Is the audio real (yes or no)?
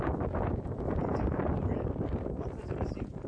yes